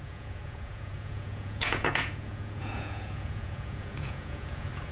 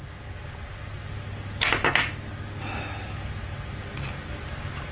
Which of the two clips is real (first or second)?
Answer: second